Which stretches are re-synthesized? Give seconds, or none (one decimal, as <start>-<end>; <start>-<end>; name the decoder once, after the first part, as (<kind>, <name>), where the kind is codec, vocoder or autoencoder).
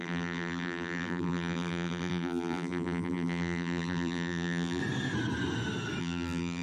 0.0-4.8 (vocoder, BigVGAN v2); 6.0-6.6